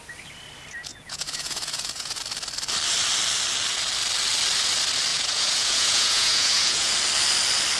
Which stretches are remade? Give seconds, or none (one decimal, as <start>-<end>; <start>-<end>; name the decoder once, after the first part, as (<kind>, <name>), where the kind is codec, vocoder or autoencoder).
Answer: 0.9-2.2 (vocoder, Vocos); 5.1-6.9